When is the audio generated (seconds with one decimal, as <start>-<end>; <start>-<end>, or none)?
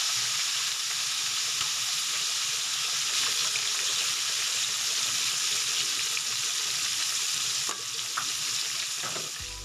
none